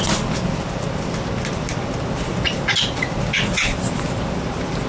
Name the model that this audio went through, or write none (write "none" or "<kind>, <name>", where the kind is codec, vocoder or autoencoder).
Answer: none